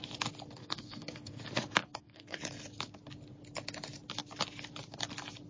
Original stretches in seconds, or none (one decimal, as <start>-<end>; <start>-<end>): 0.0-0.6; 1.4-1.8; 2.4-5.5